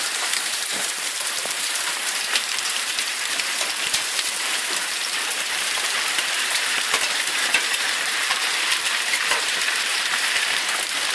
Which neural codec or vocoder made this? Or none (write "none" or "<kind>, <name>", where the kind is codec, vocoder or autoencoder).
vocoder, BigVGAN v2